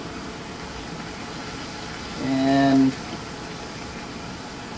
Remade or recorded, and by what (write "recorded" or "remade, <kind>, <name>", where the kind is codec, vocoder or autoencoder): recorded